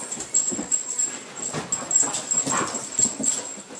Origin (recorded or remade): recorded